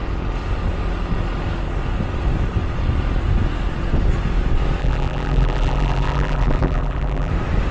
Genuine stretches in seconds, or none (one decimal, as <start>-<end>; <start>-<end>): 0.0-4.8; 7.3-7.7